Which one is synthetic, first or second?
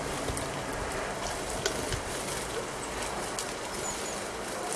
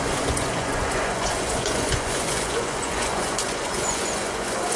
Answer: second